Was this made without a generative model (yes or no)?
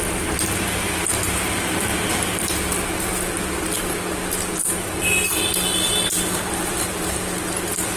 yes